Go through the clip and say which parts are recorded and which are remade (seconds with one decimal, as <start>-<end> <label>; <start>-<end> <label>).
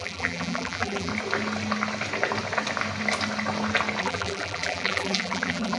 0.0-1.1 remade; 1.1-4.0 recorded; 4.0-5.8 remade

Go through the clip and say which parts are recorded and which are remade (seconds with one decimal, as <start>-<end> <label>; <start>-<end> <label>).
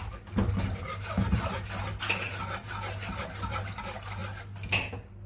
0.0-5.3 recorded